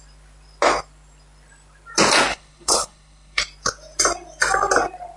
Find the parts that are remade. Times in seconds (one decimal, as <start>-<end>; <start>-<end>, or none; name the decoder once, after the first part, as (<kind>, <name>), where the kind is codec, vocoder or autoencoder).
2.3-3.4 (codec, HILCodec)